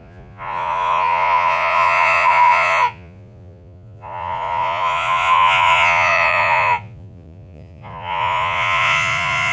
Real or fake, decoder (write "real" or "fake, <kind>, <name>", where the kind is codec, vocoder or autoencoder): fake, vocoder, Vocos